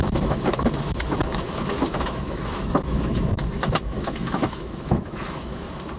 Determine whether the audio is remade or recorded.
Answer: remade